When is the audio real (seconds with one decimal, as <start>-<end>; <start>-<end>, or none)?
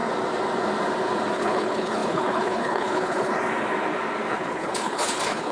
0.0-1.3; 3.3-4.3